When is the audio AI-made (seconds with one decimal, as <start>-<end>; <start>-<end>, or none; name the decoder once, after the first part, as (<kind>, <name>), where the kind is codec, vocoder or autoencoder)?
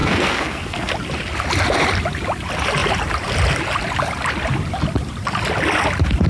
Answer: 0.0-0.9 (codec, SNAC)